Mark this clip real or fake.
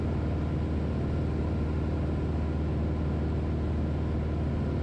real